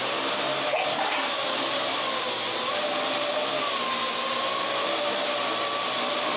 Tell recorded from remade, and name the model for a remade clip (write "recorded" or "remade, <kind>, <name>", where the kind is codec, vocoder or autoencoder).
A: recorded